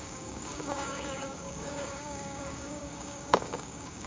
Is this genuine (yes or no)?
no